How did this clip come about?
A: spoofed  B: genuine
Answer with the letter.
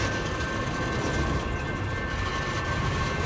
B